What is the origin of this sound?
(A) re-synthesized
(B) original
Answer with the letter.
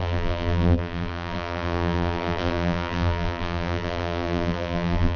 A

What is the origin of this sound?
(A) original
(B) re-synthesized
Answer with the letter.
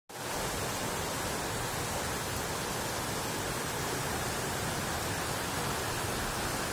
A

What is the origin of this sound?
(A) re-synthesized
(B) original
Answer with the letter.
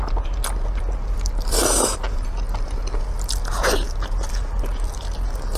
B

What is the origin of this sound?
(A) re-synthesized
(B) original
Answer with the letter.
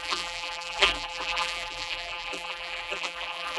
A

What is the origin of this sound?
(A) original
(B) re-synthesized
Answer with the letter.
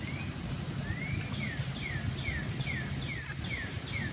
A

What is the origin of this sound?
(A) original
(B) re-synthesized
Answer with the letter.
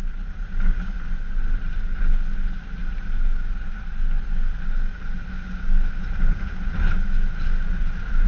A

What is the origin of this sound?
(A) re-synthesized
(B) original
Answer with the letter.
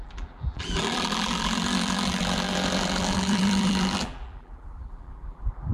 A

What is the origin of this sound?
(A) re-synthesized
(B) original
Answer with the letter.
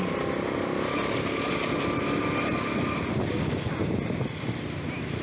B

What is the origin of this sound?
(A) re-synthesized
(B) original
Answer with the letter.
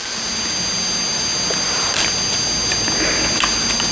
B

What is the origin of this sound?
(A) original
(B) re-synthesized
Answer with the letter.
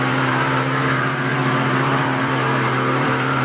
B